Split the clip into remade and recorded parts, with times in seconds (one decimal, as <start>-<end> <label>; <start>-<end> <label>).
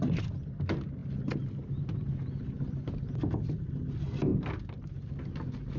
0.0-5.8 recorded